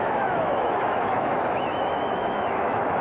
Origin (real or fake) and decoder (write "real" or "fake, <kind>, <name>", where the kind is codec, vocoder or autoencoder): fake, autoencoder, DAC-VAE